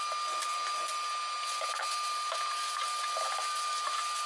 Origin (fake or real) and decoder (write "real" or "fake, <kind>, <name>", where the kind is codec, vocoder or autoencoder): real